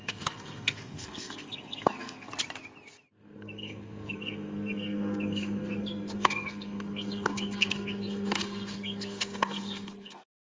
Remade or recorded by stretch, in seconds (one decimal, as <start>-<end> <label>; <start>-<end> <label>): 0.0-2.3 remade; 2.3-3.1 recorded; 3.1-10.5 remade